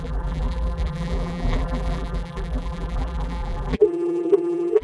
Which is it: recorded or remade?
remade